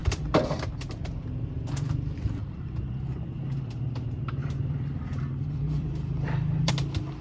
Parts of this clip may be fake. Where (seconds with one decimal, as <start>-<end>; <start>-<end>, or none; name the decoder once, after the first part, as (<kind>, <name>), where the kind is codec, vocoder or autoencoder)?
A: 0.0-0.7 (vocoder, BigVGAN v2); 4.4-6.7